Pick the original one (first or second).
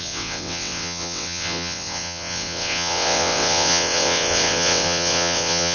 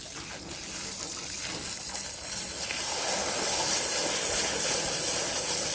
second